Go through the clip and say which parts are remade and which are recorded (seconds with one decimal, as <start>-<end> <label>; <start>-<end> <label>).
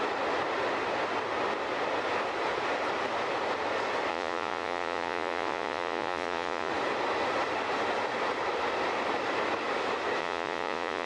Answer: 0.0-4.1 recorded; 4.1-6.7 remade; 6.7-10.2 recorded; 10.2-11.1 remade